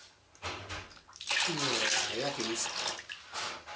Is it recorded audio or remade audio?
recorded